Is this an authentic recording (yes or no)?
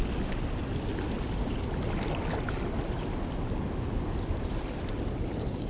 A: yes